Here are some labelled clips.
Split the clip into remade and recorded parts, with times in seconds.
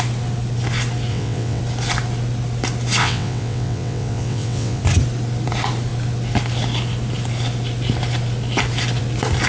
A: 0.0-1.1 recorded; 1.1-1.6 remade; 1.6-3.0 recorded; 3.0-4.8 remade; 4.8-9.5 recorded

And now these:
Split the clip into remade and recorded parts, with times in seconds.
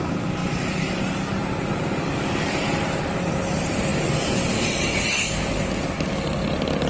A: 0.0-6.9 recorded